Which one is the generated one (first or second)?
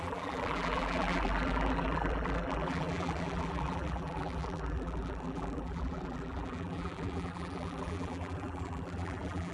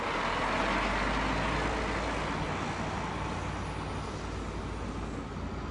first